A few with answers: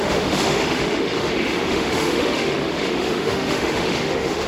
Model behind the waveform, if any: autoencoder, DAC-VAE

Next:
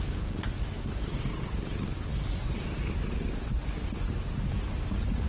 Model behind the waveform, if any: none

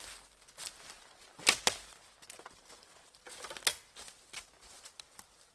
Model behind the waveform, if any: none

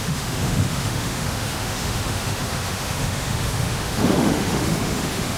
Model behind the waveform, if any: autoencoder, DAC-VAE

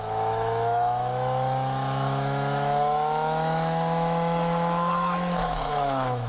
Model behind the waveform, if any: autoencoder, DAC-VAE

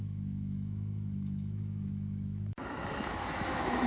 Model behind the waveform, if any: autoencoder, DAC-VAE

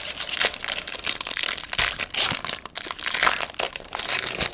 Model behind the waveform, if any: none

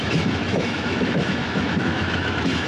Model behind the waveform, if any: autoencoder, DAC-VAE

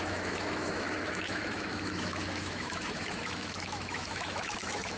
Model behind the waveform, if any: autoencoder, DAC-VAE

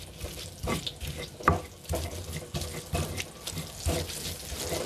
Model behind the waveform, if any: none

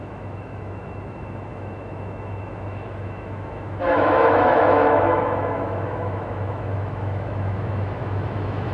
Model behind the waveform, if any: autoencoder, DAC-VAE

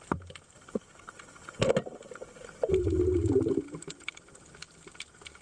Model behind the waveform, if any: none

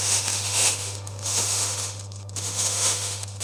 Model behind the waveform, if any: autoencoder, DAC-VAE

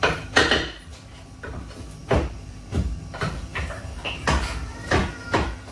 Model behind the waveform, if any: none